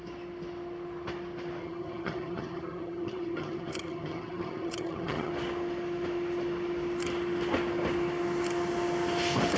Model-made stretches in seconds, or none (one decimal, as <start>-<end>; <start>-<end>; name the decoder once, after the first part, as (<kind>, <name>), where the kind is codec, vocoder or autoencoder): 1.6-5.3 (vocoder, HiFi-GAN)